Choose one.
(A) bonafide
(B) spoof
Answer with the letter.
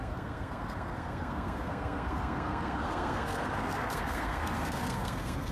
B